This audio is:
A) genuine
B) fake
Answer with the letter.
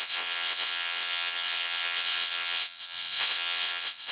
B